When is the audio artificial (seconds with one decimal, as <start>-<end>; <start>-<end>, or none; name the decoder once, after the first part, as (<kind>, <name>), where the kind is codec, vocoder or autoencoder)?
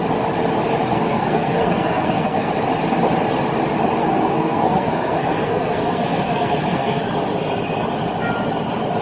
0.9-2.5 (codec, SNAC); 4.0-7.0